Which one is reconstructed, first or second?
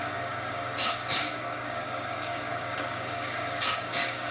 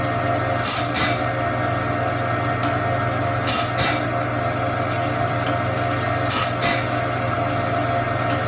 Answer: first